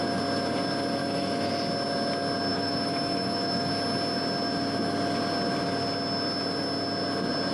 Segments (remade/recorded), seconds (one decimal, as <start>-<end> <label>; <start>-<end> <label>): 0.0-1.0 recorded; 1.0-1.5 remade; 1.5-2.5 recorded; 2.5-3.7 remade; 3.7-7.5 recorded